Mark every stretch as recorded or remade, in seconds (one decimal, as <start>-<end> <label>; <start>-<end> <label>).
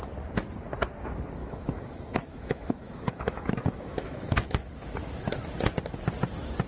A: 0.0-1.4 recorded; 1.4-5.4 remade; 5.4-6.7 recorded